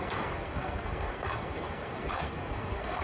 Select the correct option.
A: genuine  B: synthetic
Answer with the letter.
B